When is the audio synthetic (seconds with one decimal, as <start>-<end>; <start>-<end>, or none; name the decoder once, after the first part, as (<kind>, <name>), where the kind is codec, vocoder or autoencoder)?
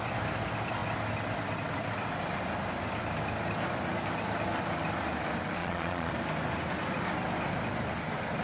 5.6-6.1 (vocoder, Vocos)